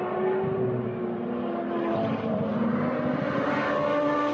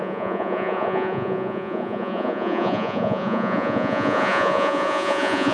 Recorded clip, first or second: first